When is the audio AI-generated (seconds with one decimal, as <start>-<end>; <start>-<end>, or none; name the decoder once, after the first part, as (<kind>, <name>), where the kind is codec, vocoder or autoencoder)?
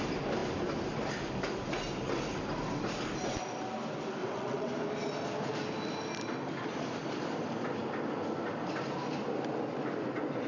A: 4.2-4.7 (vocoder, WaveNeXt)